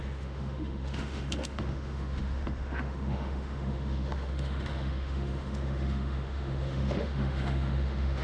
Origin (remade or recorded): remade